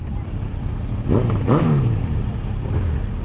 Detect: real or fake real